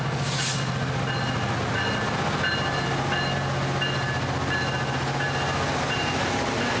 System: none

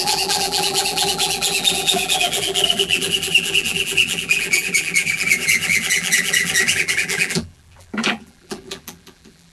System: vocoder, BigVGAN v2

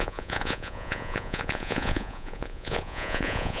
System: vocoder, Vocos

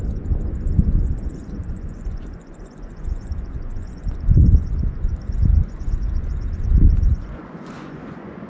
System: vocoder, Vocos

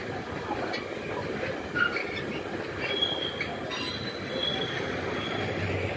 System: none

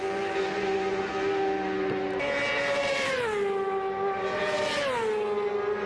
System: none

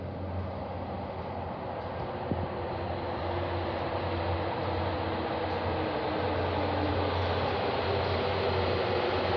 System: none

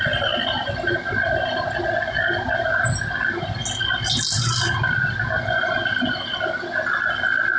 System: none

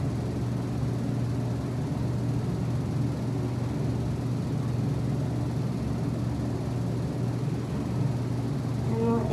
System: none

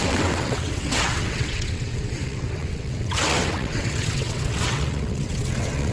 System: vocoder, WaveNeXt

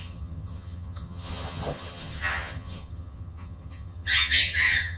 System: vocoder, HiFi-GAN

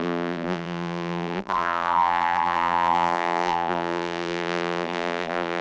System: vocoder, BigVGAN v2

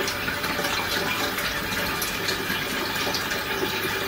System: none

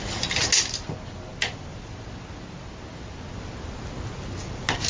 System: none